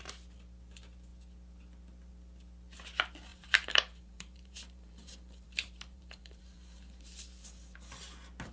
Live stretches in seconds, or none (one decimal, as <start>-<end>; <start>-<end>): 0.0-3.3; 8.0-8.5